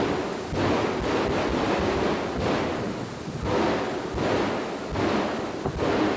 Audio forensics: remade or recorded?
recorded